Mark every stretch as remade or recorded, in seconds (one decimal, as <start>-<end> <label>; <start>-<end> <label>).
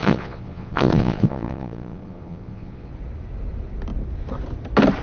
0.0-2.9 remade; 2.9-5.0 recorded